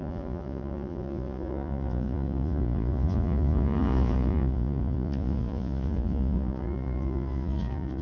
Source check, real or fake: fake